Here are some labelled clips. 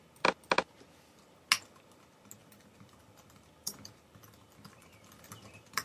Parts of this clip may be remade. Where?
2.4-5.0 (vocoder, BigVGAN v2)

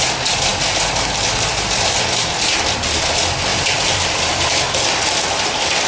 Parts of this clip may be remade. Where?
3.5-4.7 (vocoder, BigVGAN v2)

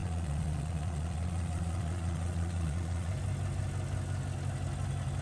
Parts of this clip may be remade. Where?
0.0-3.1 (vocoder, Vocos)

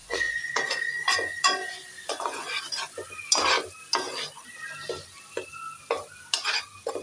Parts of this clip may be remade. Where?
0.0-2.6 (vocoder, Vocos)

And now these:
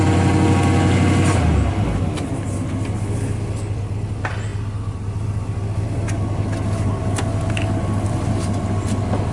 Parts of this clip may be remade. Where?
none